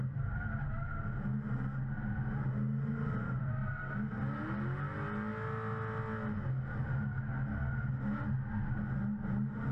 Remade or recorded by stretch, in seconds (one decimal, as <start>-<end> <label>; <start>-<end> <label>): 0.0-9.7 recorded